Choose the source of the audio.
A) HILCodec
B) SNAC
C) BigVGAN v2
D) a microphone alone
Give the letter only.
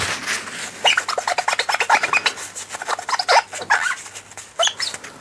D